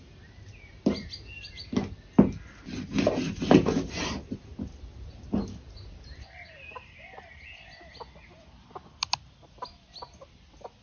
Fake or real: real